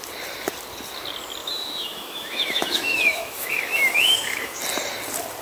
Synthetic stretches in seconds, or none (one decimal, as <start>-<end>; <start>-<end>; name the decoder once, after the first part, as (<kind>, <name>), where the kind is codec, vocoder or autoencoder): 1.4-4.6 (autoencoder, DAC-VAE)